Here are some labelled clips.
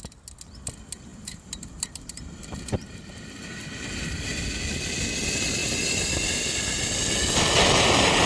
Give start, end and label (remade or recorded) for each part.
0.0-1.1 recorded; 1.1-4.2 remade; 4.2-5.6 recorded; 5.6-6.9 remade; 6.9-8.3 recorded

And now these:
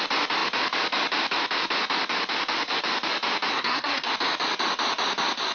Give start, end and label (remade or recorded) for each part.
0.0-3.5 recorded; 3.5-4.1 remade; 4.1-5.5 recorded

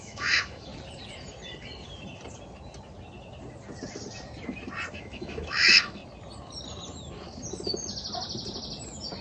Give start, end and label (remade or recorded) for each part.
0.0-0.7 remade; 0.7-4.9 recorded; 4.9-6.0 remade; 6.0-9.2 recorded

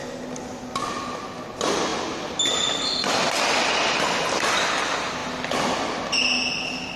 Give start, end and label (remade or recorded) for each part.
0.0-7.0 recorded

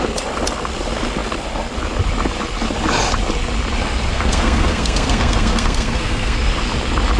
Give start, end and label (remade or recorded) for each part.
0.0-4.1 recorded; 4.1-6.4 remade; 6.4-7.2 recorded

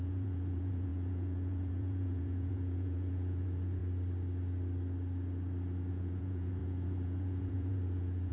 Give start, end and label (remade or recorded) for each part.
0.0-3.8 remade; 3.8-5.9 recorded; 5.9-8.3 remade